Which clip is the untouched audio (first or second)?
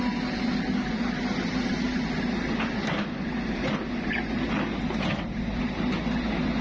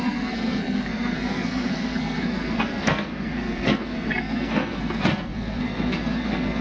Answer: first